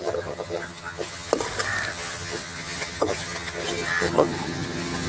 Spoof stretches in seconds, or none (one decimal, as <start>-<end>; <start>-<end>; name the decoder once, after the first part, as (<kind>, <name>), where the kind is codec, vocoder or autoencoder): 0.0-1.3 (vocoder, HiFi-GAN); 1.9-5.1